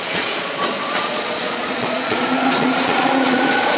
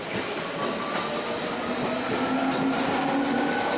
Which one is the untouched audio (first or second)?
second